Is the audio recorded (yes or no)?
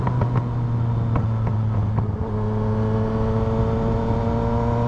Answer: yes